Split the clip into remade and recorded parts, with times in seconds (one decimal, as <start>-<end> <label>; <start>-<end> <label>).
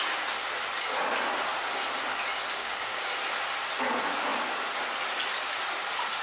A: 0.0-2.6 recorded; 2.6-3.1 remade; 3.1-6.2 recorded